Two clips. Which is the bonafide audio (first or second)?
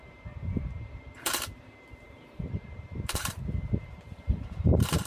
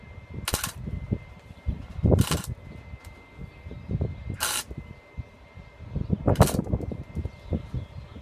second